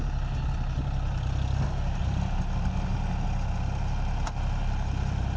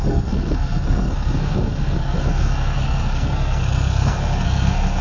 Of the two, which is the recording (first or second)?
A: first